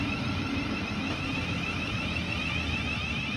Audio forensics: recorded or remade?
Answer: recorded